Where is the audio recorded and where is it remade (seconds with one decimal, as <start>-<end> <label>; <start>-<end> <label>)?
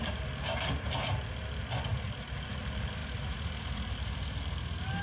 0.0-5.0 recorded